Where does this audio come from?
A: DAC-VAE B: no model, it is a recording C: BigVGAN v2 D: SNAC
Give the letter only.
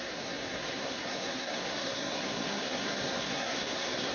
D